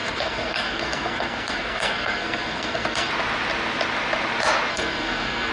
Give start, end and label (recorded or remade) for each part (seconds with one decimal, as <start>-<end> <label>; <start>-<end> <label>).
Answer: 0.0-3.1 remade; 3.1-4.7 recorded; 4.7-5.5 remade

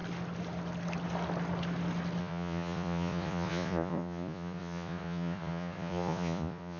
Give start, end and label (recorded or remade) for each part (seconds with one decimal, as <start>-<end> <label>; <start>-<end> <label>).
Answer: 0.0-2.2 recorded; 2.2-6.8 remade

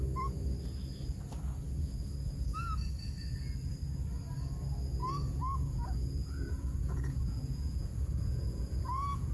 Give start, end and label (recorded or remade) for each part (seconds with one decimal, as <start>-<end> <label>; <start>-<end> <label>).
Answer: 0.0-5.0 recorded; 5.0-9.3 remade

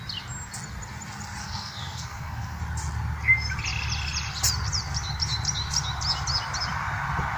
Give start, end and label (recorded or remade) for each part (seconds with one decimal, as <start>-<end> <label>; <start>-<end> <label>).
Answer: 0.0-1.4 recorded; 1.4-2.6 remade; 2.6-7.4 recorded

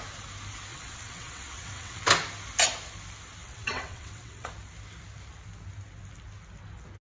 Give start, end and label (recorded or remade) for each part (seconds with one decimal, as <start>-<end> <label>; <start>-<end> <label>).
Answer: 0.0-0.7 recorded; 0.7-2.0 remade; 2.0-3.4 recorded; 3.4-4.5 remade; 4.5-7.0 recorded

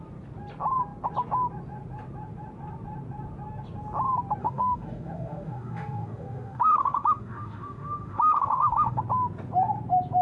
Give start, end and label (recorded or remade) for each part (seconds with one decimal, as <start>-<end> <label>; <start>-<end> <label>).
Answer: 0.0-4.4 recorded; 4.4-9.0 remade; 9.0-10.2 recorded

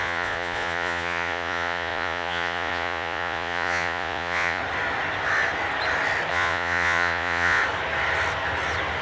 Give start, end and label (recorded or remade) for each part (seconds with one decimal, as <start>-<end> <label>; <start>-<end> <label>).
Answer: 0.0-4.6 remade; 4.6-6.3 recorded; 6.3-7.6 remade; 7.6-9.0 recorded

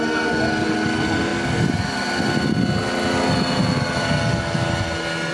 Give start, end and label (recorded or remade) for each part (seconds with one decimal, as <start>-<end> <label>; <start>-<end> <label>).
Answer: 0.0-5.3 recorded